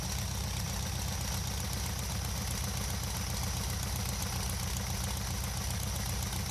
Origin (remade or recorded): recorded